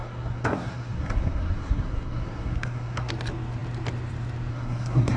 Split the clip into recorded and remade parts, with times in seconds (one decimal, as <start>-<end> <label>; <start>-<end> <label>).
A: 0.0-3.1 remade; 3.1-4.5 recorded; 4.5-5.2 remade